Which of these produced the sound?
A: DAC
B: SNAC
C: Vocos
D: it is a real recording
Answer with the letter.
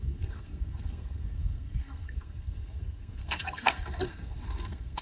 B